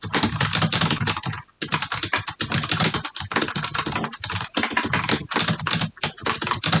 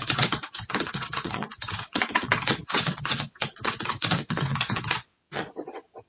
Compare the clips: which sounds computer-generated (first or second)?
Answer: second